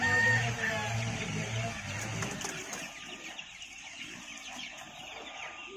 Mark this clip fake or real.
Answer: real